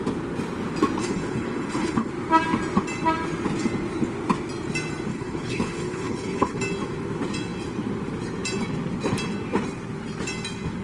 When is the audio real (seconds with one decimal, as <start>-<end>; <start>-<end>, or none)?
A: 0.0-1.0; 2.1-5.1; 6.6-10.8